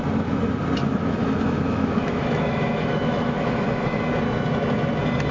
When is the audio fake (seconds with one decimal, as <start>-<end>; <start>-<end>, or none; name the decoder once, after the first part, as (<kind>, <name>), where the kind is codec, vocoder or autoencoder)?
0.8-4.0 (autoencoder, DAC-VAE)